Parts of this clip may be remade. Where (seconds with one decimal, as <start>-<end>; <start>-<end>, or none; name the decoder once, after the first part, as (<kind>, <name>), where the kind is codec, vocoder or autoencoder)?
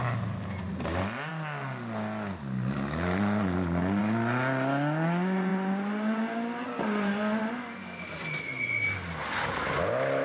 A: none